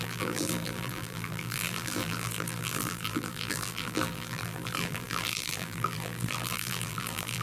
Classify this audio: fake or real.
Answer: fake